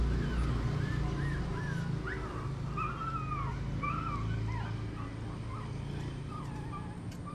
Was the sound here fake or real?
real